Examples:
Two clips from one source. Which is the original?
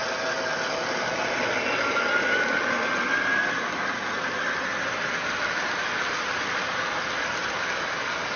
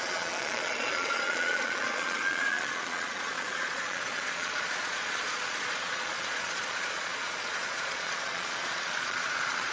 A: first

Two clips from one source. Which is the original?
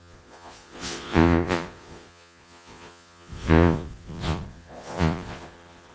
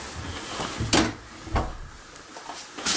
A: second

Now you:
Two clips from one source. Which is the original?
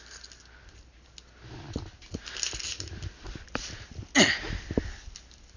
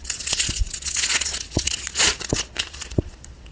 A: first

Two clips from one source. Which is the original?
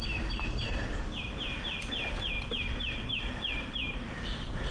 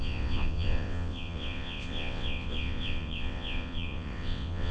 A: first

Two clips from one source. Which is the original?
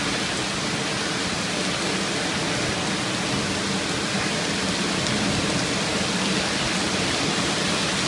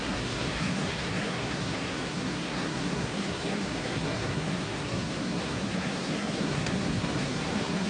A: first